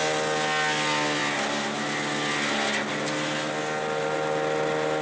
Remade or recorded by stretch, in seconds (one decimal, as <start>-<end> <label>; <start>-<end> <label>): 0.0-5.0 recorded